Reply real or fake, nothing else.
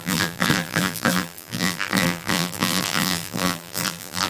fake